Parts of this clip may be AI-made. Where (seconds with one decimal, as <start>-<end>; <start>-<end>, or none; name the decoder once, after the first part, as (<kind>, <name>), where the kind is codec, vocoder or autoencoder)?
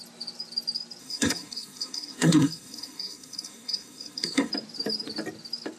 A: 1.0-4.5 (codec, SNAC)